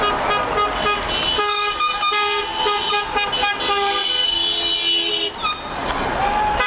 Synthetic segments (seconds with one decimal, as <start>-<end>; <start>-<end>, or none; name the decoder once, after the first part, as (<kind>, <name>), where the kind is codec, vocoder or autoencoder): none